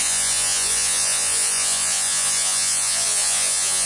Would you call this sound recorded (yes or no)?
no